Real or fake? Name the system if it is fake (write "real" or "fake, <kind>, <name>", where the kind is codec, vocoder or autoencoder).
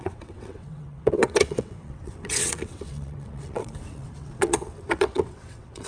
fake, vocoder, WaveNeXt